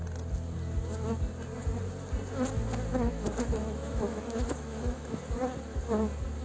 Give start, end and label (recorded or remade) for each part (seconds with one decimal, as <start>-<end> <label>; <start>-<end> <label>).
0.0-2.9 recorded; 2.9-5.2 remade; 5.2-6.4 recorded